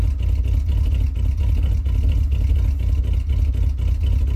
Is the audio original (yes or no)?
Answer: yes